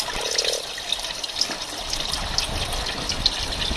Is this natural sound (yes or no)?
yes